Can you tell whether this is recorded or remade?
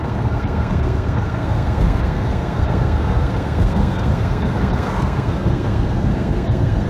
remade